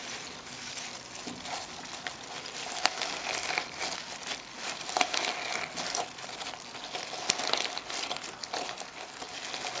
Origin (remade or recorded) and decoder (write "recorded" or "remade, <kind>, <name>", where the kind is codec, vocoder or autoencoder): recorded